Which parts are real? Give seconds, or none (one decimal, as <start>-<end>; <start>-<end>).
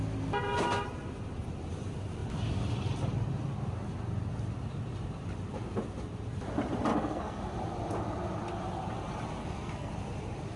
0.0-6.9; 7.4-9.4; 9.9-10.6